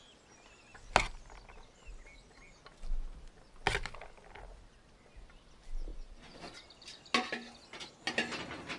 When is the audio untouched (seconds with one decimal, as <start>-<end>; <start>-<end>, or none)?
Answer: 0.0-5.9; 6.4-8.8